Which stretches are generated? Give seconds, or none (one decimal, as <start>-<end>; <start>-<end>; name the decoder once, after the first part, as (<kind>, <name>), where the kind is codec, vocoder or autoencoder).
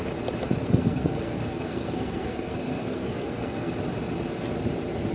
0.6-3.7 (codec, SNAC)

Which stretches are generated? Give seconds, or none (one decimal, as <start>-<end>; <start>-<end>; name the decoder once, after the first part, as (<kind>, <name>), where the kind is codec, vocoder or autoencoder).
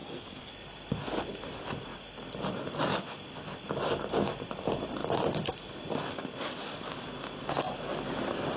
0.0-0.5 (codec, SNAC)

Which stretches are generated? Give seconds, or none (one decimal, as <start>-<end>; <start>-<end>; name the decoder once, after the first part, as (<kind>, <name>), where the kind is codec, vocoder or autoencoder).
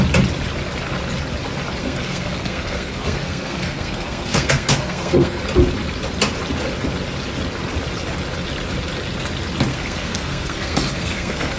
1.8-5.4 (codec, SNAC); 9.7-11.6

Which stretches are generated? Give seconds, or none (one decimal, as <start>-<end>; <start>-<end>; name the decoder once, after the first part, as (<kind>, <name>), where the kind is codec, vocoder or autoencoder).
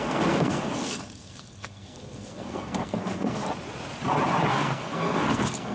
0.0-3.4 (codec, SNAC); 4.5-5.7